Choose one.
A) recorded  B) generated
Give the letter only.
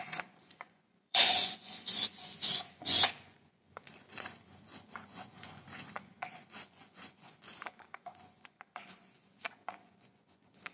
B